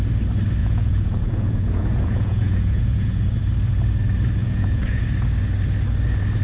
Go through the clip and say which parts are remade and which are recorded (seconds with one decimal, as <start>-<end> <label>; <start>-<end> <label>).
0.0-0.6 recorded; 0.6-3.2 remade; 3.2-4.4 recorded; 4.4-5.0 remade; 5.0-6.4 recorded